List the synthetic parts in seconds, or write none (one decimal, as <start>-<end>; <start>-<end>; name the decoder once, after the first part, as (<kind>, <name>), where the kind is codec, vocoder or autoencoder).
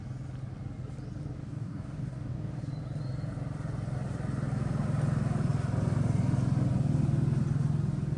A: 1.4-2.6 (codec, DAC)